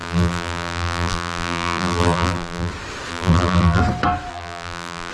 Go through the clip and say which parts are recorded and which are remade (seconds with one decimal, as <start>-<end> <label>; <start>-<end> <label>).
0.0-2.7 remade; 2.7-3.1 recorded; 3.1-3.8 remade; 3.8-4.3 recorded; 4.3-5.1 remade